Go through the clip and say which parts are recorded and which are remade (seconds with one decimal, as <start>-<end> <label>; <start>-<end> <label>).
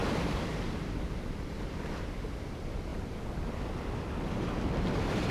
0.0-2.9 remade; 2.9-5.3 recorded